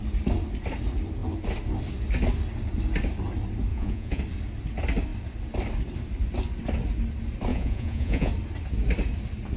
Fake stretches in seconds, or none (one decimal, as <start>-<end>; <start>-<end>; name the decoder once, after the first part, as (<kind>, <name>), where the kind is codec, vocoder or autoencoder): 3.7-4.2 (vocoder, Vocos); 7.5-8.3